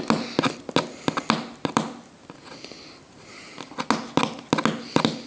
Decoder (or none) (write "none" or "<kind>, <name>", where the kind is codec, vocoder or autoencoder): none